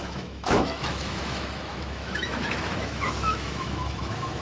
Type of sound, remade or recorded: remade